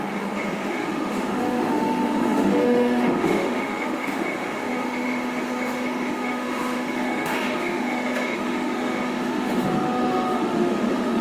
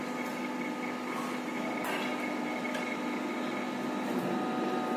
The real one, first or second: second